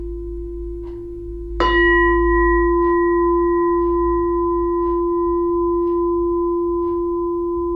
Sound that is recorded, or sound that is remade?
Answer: recorded